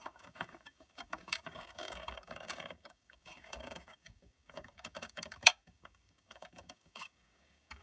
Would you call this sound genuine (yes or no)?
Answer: no